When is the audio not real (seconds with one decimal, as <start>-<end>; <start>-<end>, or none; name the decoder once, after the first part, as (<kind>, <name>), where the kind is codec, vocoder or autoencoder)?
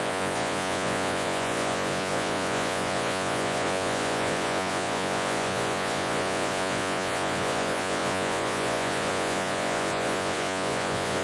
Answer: 0.0-11.2 (vocoder, Vocos)